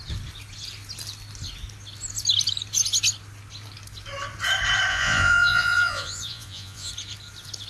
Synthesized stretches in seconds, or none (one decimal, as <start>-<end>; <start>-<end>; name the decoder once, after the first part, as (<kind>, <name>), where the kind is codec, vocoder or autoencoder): 4.9-6.9 (vocoder, Vocos)